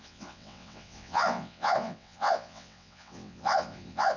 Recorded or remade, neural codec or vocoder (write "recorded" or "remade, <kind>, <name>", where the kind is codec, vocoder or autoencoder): remade, vocoder, WaveNeXt